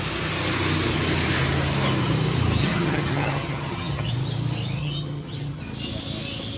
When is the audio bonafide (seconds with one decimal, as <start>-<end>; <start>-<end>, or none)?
0.0-2.6; 4.1-4.8; 5.6-6.6